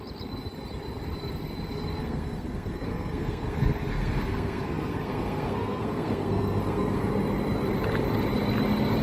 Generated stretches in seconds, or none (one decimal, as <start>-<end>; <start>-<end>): 2.0-7.1

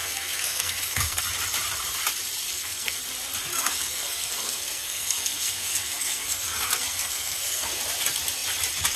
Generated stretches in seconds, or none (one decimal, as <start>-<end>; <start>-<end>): 0.0-1.2; 2.5-3.0; 3.5-7.8

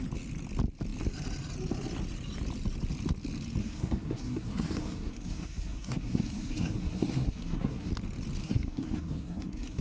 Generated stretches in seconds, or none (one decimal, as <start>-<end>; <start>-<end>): 3.6-7.9; 8.4-9.8

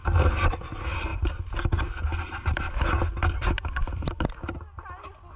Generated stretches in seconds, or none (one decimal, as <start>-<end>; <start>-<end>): none